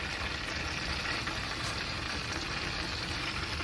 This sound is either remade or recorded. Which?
recorded